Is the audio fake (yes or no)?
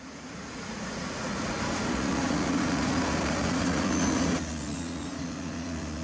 yes